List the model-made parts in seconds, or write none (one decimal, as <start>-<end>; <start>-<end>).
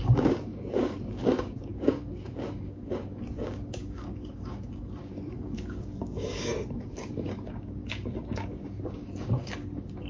0.0-10.1